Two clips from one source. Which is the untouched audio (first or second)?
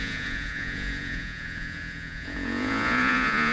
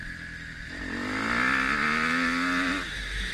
second